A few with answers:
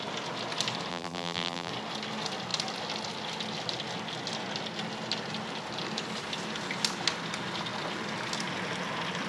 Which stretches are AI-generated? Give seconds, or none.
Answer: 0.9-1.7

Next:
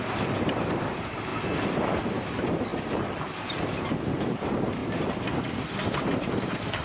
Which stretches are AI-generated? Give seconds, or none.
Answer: 0.0-1.3; 2.3-4.8; 6.0-6.8